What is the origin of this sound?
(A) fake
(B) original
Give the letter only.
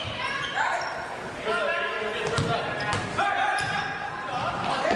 B